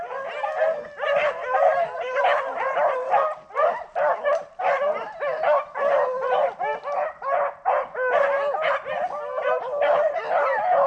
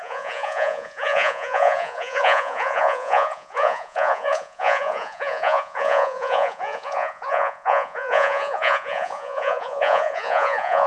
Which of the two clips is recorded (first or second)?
first